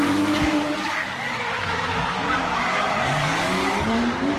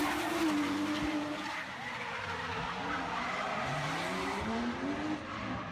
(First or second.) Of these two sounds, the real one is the second